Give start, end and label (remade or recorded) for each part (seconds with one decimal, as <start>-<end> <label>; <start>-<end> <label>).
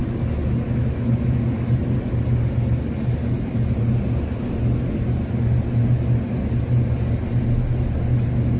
0.0-8.6 recorded